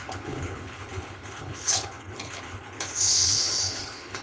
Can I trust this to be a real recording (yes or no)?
no